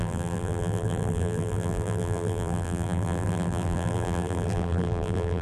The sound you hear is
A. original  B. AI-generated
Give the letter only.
B